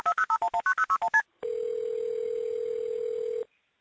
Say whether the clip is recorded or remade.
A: recorded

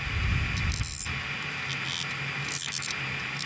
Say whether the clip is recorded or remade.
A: recorded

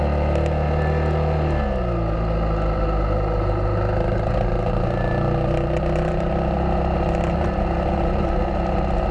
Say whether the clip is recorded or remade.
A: recorded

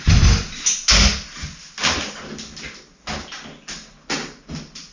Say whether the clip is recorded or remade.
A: recorded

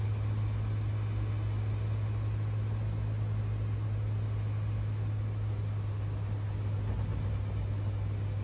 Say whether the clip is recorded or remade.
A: recorded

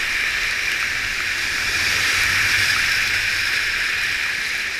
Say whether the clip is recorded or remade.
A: recorded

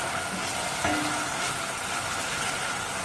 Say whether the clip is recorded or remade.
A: recorded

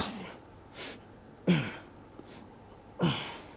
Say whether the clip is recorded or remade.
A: recorded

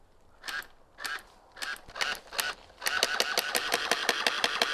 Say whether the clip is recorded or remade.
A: recorded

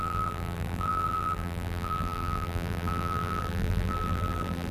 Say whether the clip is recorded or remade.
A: remade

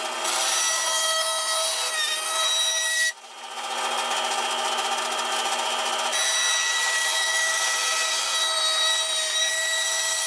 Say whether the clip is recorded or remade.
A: recorded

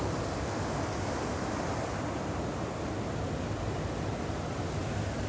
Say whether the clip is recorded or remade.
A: recorded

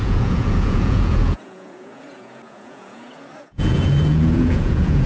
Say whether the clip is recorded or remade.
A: remade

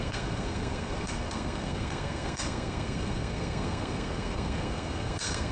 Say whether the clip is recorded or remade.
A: remade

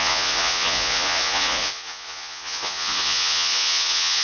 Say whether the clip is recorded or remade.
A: remade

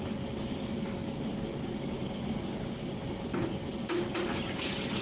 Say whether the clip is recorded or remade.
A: recorded